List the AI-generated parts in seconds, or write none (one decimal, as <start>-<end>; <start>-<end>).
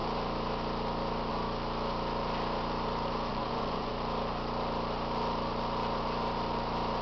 3.3-3.9